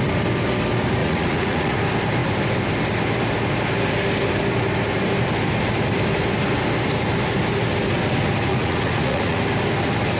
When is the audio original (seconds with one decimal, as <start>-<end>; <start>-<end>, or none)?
0.0-1.0; 1.8-8.5; 9.4-10.2